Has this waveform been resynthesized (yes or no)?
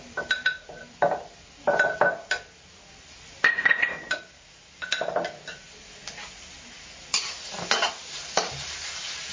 no